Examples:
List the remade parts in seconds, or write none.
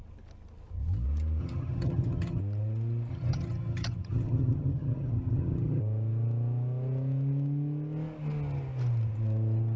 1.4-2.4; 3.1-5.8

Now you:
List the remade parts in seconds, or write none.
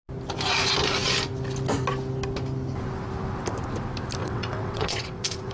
4.2-5.5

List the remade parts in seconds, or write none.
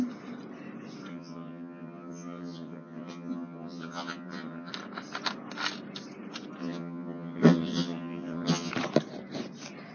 1.1-4.7; 6.6-8.7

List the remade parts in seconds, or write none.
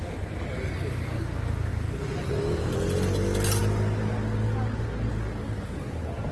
none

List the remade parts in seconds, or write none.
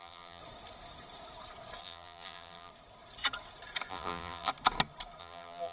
0.0-0.4; 1.8-2.7; 3.9-4.5; 5.2-5.7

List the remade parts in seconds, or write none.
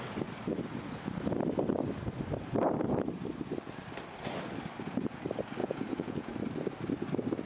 5.6-6.3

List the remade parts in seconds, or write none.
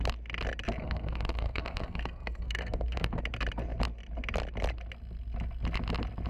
0.8-3.2